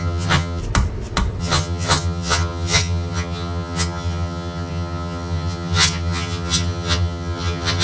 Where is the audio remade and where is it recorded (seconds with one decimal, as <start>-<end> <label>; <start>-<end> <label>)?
0.0-0.6 remade; 0.6-1.4 recorded; 1.4-7.8 remade